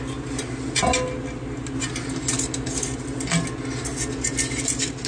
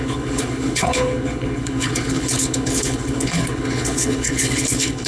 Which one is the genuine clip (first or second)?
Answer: first